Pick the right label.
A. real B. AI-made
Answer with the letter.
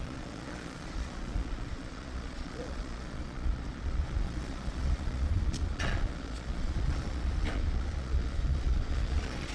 B